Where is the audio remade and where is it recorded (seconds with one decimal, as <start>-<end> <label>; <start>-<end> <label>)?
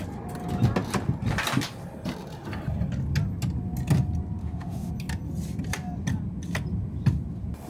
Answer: 0.0-4.4 recorded; 4.4-4.9 remade; 4.9-7.7 recorded